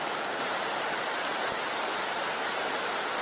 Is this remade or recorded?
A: remade